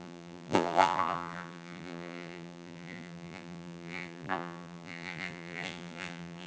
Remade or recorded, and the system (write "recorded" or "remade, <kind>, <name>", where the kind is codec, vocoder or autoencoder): remade, vocoder, BigVGAN v2